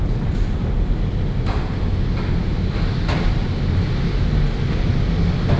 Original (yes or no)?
yes